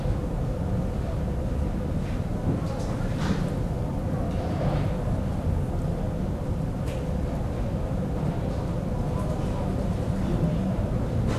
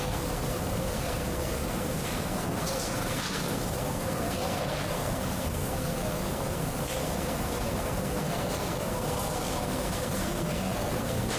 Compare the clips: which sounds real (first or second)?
first